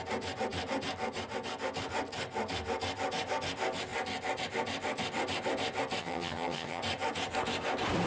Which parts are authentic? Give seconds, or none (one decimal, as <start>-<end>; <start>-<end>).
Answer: 0.0-6.0; 6.8-8.1